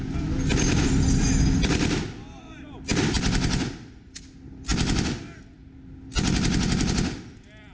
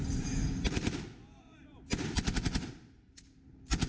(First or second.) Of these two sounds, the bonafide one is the first